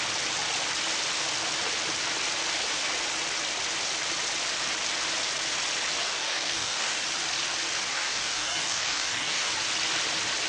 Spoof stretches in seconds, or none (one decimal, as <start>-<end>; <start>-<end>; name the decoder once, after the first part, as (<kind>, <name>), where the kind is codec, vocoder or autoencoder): 6.0-7.0 (codec, DAC); 7.9-9.5